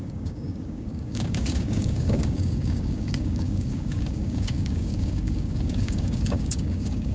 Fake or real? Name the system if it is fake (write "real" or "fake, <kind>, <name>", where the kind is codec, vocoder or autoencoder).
fake, codec, DAC